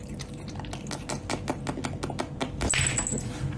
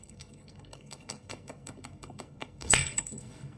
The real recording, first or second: first